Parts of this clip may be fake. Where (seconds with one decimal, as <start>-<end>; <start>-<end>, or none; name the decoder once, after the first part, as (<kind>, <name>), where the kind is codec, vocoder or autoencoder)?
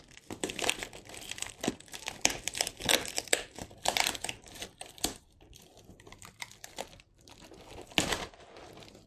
2.8-6.1 (vocoder, BigVGAN v2)